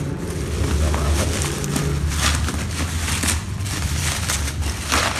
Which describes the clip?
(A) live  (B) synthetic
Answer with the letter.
A